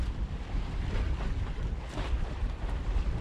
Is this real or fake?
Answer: real